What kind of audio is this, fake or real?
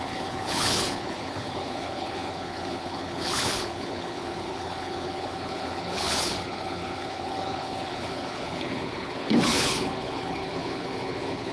fake